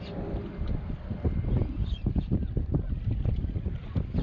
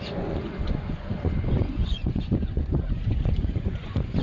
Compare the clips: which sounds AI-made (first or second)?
second